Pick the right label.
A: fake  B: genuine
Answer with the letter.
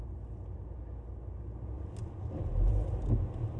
B